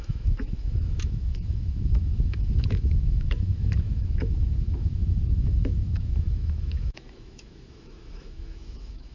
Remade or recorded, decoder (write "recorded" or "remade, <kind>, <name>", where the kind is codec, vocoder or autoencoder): remade, autoencoder, DAC-VAE